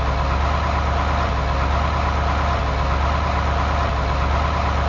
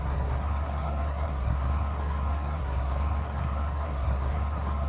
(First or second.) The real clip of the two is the first